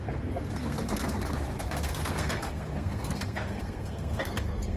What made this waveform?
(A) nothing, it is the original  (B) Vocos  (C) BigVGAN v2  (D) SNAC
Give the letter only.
D